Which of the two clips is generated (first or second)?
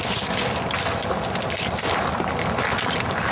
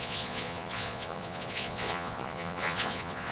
second